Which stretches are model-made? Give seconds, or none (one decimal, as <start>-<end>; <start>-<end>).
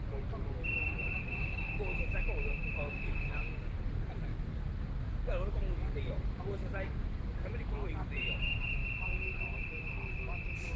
none